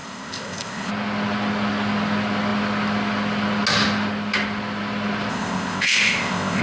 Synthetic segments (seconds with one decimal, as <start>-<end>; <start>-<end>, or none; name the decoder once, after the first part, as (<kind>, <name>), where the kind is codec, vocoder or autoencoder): 0.0-0.9 (codec, ZipCodec); 5.3-6.6